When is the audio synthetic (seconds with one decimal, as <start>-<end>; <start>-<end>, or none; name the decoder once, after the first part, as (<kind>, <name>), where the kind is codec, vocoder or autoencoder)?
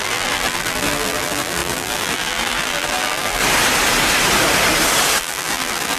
0.0-3.4 (vocoder, BigVGAN v2); 5.2-6.0